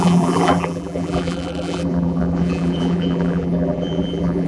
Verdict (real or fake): fake